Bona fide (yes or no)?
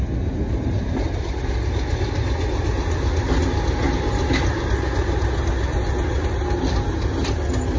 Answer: yes